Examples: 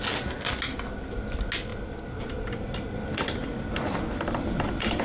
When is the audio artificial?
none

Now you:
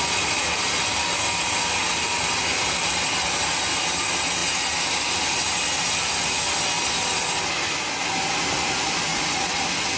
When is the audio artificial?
9.1-9.6

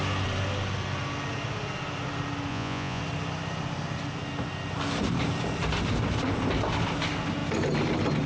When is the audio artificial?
2.5-3.0

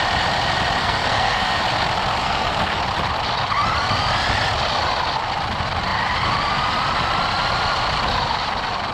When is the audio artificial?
0.8-1.6; 2.2-2.8

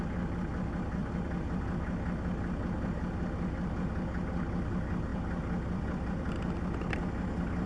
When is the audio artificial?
1.0-1.6; 5.1-6.3

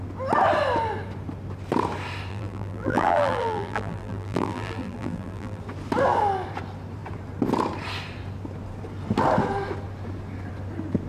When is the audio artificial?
2.3-5.6

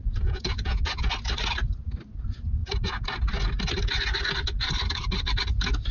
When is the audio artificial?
0.0-1.1